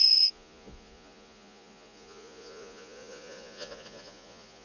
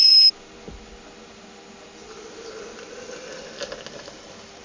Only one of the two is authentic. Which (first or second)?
second